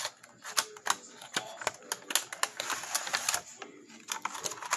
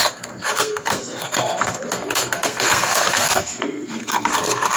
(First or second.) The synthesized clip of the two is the second